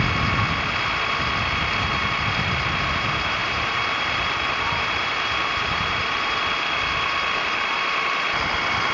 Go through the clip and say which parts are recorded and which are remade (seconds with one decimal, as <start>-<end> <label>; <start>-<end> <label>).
0.0-3.4 recorded; 3.4-6.4 remade; 6.4-8.9 recorded